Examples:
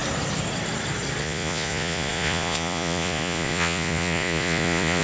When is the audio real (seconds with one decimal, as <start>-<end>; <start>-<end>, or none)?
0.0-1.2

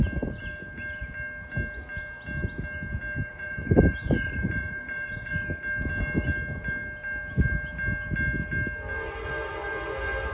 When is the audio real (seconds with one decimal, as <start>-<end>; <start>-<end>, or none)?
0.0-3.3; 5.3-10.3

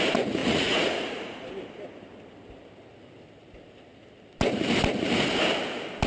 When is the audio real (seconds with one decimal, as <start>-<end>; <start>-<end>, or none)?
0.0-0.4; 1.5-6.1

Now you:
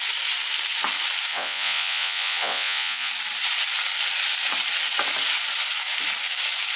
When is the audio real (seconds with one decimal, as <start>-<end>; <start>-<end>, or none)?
0.0-1.3; 3.1-6.8

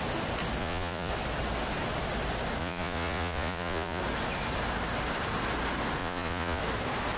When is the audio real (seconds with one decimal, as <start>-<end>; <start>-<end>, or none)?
0.0-0.6; 1.1-2.6; 4.0-6.0; 6.6-7.2

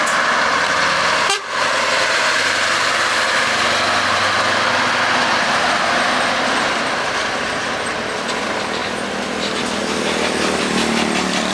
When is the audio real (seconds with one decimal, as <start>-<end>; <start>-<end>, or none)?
0.0-11.5